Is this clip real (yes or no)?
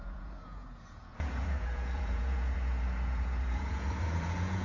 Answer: no